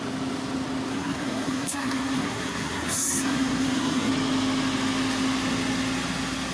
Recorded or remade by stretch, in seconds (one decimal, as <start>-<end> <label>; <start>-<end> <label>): 0.0-0.9 recorded; 0.9-4.1 remade; 4.1-6.5 recorded